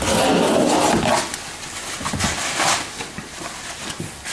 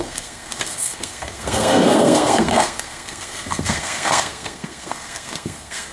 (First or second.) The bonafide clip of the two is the first